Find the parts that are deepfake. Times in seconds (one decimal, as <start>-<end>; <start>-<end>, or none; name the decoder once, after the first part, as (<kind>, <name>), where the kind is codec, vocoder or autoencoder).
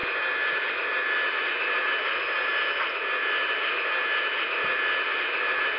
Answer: none